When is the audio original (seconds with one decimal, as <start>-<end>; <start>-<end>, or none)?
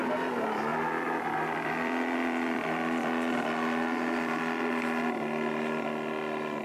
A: 0.0-0.7; 3.1-6.6